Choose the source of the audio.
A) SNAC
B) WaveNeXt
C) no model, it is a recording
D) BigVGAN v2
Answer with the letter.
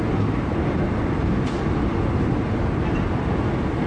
C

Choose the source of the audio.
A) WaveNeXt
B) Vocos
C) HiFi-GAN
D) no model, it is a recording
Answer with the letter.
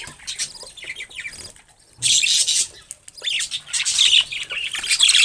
D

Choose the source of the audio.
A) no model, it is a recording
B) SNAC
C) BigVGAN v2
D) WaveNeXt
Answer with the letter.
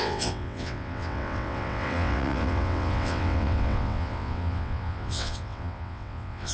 D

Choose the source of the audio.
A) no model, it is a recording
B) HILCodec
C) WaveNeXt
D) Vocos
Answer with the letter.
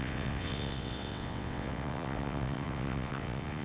C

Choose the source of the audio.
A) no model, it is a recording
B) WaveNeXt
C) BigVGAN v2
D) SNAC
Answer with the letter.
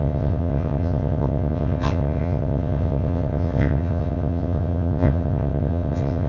B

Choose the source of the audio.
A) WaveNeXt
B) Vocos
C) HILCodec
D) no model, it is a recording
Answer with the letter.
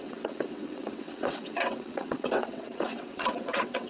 A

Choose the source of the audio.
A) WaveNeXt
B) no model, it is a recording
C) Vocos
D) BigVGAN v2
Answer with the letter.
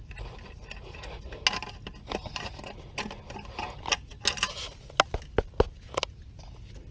B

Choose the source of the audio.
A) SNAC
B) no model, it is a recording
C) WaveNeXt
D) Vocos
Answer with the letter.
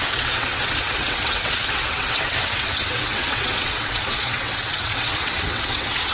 C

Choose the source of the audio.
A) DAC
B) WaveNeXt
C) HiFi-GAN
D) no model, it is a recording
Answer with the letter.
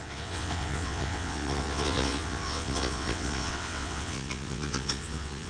B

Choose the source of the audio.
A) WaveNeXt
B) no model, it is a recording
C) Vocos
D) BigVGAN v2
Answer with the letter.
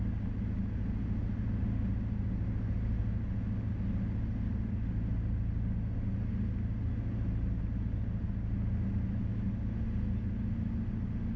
B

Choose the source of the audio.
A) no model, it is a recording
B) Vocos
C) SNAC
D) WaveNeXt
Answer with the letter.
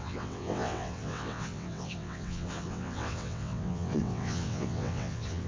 D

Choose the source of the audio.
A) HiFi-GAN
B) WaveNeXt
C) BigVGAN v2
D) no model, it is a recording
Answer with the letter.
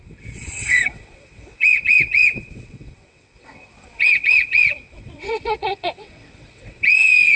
B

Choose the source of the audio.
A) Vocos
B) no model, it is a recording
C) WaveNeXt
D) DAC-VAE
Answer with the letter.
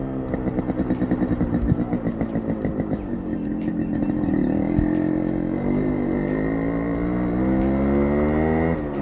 B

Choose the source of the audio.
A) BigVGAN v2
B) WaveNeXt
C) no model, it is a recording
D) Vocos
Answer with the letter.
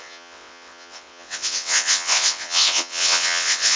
B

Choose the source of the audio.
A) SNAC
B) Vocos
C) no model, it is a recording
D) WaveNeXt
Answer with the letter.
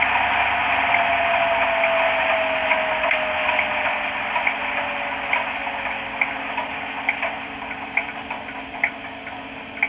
C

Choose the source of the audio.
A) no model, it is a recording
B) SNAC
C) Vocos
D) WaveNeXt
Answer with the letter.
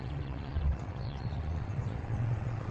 D